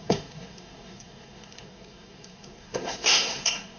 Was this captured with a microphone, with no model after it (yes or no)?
no